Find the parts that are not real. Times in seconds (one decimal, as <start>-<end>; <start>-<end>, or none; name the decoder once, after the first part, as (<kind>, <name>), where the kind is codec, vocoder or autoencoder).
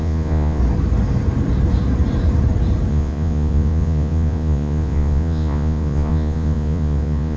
0.0-0.6 (vocoder, Vocos); 2.9-7.4